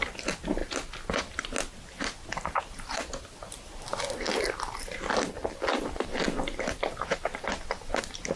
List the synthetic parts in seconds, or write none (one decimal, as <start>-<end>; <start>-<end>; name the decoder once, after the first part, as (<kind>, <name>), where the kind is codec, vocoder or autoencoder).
none